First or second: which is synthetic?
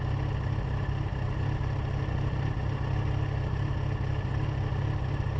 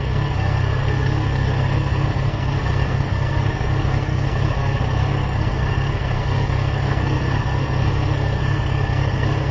second